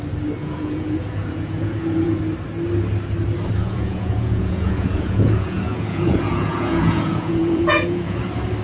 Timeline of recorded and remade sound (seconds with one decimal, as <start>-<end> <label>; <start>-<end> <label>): 0.0-0.4 recorded; 0.4-2.2 remade; 2.2-3.6 recorded; 3.6-8.2 remade; 8.2-8.6 recorded